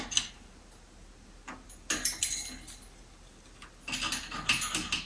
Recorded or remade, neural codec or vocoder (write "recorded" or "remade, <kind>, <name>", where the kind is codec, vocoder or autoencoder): recorded